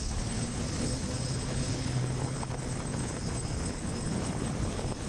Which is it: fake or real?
fake